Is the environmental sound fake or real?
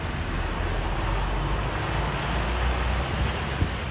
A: real